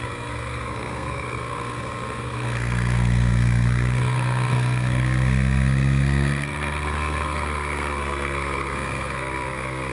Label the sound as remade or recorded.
remade